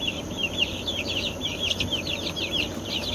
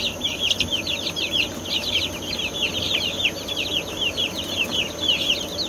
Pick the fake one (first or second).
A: first